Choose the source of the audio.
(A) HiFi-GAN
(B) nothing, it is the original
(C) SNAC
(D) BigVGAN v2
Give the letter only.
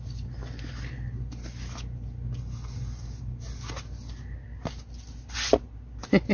B